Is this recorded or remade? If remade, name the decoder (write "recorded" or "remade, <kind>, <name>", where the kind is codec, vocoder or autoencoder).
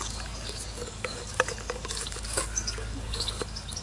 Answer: remade, codec, DAC